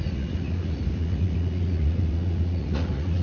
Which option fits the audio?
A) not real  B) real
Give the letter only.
A